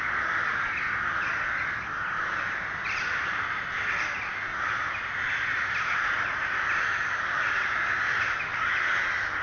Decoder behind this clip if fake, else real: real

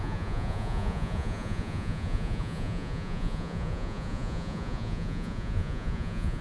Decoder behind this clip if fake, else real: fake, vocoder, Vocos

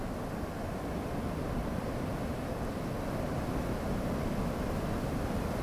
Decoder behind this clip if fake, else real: real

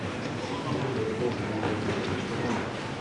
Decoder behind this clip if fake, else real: real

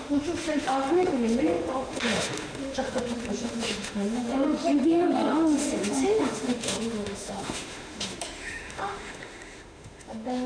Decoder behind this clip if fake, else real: fake, autoencoder, DAC-VAE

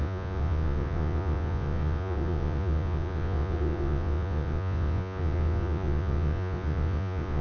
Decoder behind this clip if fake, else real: fake, vocoder, Vocos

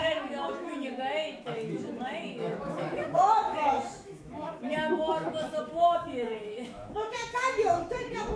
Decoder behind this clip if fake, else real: fake, autoencoder, DAC-VAE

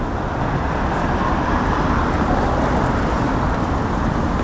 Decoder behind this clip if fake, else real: real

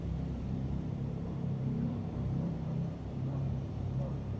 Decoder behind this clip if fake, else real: fake, vocoder, BigVGAN v2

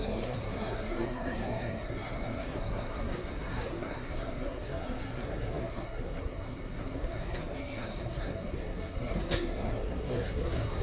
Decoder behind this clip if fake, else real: fake, codec, SNAC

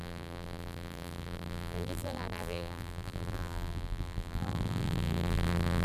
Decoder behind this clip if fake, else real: fake, vocoder, BigVGAN v2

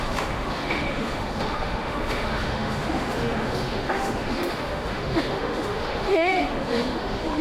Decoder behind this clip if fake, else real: fake, autoencoder, DAC-VAE